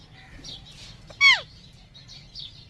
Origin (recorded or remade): recorded